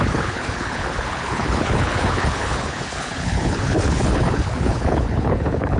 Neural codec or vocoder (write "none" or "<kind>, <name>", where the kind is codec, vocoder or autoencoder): codec, HILCodec